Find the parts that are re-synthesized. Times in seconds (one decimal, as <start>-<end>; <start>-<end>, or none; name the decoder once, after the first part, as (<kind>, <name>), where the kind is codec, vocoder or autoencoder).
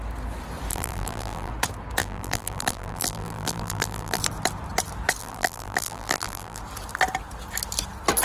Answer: 0.7-1.5 (vocoder, BigVGAN v2); 2.0-4.2; 5.2-6.6